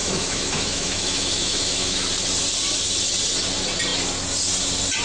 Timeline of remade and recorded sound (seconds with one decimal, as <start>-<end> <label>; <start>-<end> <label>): 0.0-2.1 remade; 2.1-5.0 recorded